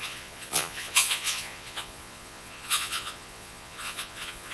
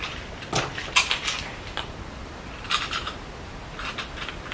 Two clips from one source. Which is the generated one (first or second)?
first